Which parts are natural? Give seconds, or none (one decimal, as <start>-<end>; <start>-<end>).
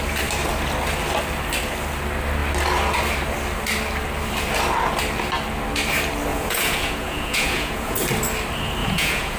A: 0.0-6.3; 8.0-8.8